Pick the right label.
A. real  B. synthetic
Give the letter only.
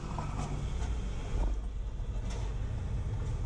A